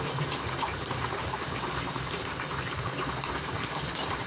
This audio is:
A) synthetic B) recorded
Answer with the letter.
A